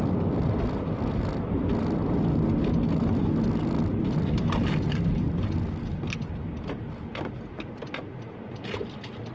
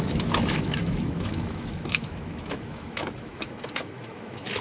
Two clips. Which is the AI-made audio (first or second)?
second